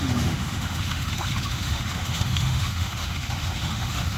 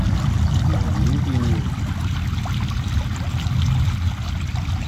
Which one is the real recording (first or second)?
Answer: second